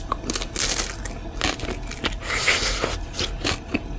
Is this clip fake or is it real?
real